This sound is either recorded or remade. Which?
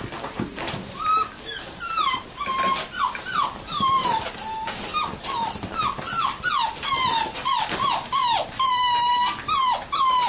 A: recorded